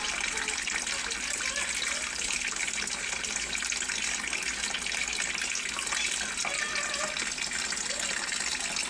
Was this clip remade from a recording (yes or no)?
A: no